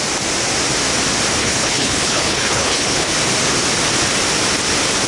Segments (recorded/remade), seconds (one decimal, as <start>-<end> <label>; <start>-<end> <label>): 0.0-1.4 recorded; 1.4-3.1 remade; 3.1-5.1 recorded